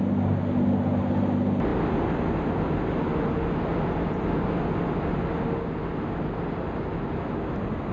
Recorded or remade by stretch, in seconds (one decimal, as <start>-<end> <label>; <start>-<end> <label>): 0.0-7.9 recorded